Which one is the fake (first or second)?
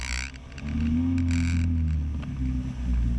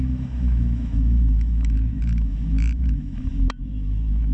second